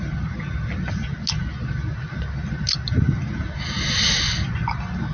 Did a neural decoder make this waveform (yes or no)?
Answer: no